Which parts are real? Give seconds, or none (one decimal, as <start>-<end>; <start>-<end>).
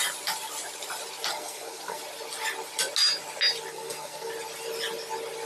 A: 0.0-1.3; 2.0-3.7; 4.3-5.5